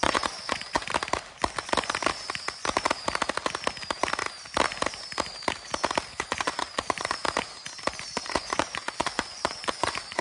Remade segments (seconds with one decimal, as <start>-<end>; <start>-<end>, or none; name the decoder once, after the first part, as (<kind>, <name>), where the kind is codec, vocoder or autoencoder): 0.0-0.9 (vocoder, Vocos); 6.1-7.2; 8.1-10.2